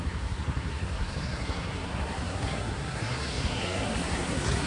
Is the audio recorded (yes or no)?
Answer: no